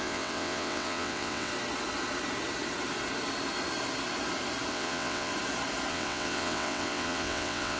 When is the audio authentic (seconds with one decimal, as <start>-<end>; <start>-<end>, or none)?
1.5-4.7; 5.3-5.9